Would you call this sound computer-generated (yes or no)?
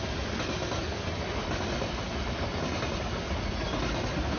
no